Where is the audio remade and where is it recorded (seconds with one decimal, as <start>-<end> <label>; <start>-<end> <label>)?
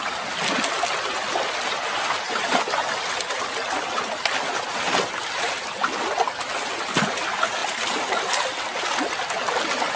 0.0-10.0 recorded